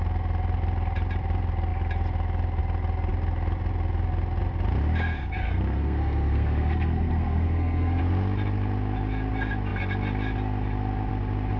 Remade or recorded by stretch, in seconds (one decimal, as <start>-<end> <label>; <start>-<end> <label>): 0.0-5.4 recorded; 5.4-8.0 remade; 8.0-11.6 recorded